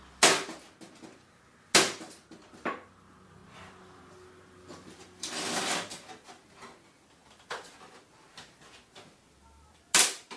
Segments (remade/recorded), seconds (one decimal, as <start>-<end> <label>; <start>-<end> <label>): 0.0-10.4 recorded